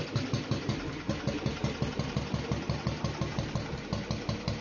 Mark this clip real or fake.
real